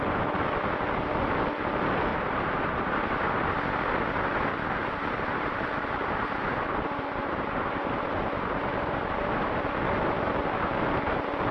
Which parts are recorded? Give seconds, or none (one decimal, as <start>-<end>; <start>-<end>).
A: 0.0-2.1; 2.9-4.5; 9.6-11.5

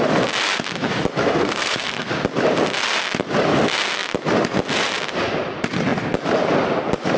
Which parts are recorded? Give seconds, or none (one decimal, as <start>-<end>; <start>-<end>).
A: 0.0-1.2; 2.1-7.2

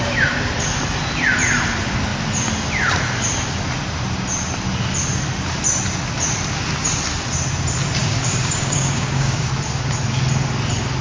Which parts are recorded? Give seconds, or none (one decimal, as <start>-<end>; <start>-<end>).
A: 0.0-8.0; 9.5-11.0

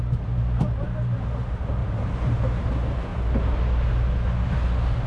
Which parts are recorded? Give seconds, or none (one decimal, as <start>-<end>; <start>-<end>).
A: 0.0-1.8; 2.7-5.1

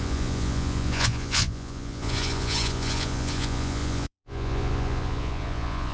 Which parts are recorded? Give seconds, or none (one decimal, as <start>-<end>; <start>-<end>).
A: none

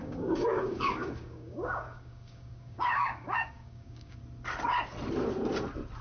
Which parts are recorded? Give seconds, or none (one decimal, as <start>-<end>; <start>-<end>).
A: 4.2-6.0

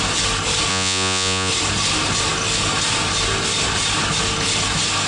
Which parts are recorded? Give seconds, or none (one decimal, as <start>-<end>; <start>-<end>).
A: 0.0-0.7; 1.5-5.1

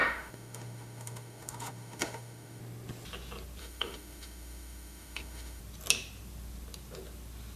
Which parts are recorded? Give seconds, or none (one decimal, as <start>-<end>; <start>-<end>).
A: 2.6-3.6; 5.6-7.6